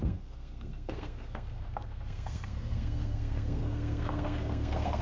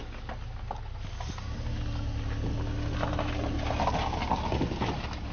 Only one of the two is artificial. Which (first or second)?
first